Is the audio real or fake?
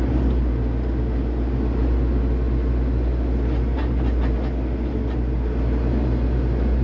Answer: real